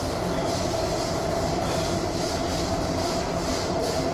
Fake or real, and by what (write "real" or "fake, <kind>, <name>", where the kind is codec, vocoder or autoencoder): fake, vocoder, BigVGAN v2